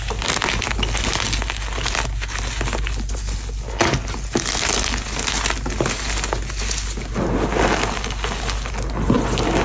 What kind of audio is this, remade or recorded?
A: recorded